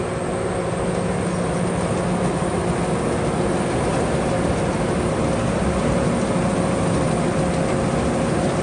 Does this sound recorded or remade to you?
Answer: recorded